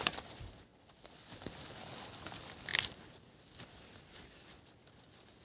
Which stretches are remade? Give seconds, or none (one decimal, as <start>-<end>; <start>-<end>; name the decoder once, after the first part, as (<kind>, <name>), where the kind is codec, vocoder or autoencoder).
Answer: none